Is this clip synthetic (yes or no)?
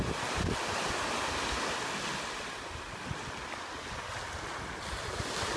no